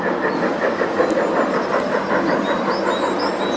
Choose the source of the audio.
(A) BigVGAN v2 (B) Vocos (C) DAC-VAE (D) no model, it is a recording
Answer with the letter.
D